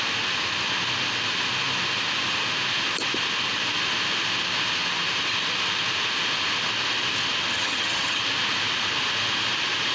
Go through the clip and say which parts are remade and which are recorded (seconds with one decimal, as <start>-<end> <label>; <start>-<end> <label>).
0.0-7.5 recorded; 7.5-8.2 remade; 8.2-9.9 recorded